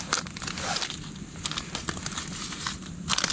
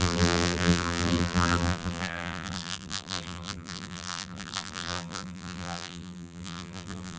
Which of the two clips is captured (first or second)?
first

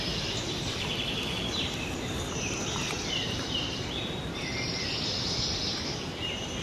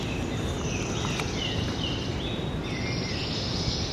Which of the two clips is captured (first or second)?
second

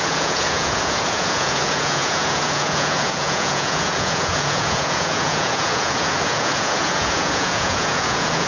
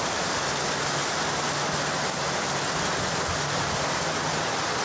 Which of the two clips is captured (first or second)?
second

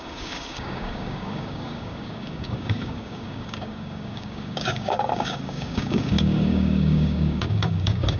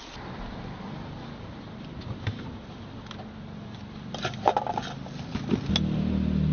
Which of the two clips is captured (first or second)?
second